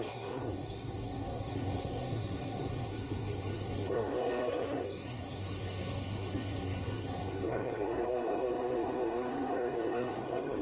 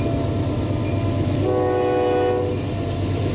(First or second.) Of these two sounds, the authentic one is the second